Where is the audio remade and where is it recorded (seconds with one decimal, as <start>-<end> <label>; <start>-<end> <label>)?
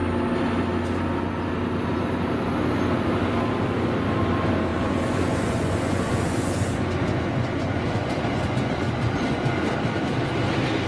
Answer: 0.0-4.7 recorded; 4.7-9.6 remade; 9.6-10.9 recorded